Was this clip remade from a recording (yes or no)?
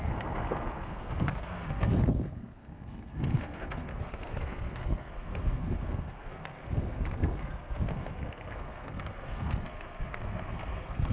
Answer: yes